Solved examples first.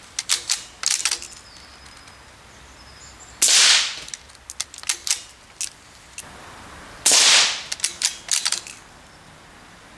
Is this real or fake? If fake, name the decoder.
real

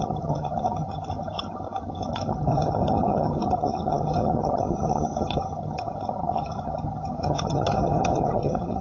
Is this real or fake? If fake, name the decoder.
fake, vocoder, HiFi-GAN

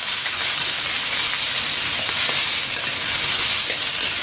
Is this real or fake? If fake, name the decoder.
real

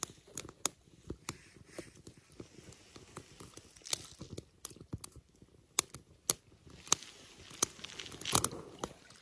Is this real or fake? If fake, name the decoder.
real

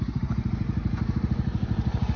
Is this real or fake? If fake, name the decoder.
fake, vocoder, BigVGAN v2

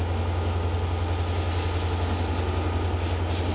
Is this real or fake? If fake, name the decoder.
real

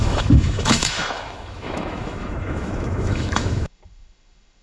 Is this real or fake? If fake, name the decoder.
fake, autoencoder, DAC-VAE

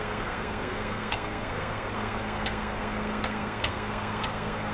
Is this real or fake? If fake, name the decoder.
fake, codec, SNAC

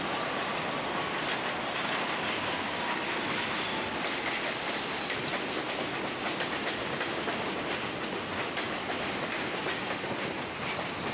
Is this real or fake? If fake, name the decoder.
real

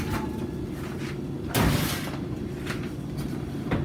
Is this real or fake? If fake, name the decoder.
real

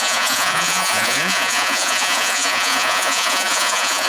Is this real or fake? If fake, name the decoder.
fake, vocoder, Vocos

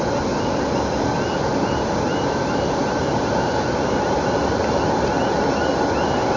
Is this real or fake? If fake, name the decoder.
real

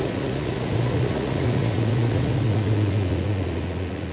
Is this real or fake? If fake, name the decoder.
fake, vocoder, Vocos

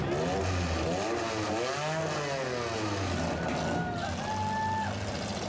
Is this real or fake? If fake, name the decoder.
real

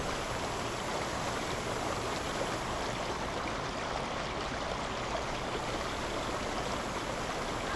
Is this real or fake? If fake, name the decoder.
real